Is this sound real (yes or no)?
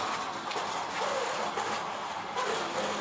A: yes